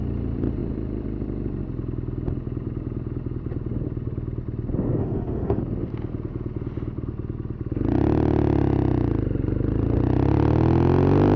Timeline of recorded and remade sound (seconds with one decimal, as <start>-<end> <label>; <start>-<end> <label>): 0.0-5.0 recorded; 5.0-5.6 remade; 5.6-11.4 recorded